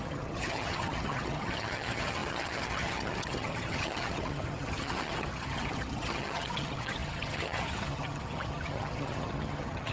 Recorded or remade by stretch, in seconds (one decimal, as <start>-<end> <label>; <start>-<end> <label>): 0.0-9.9 remade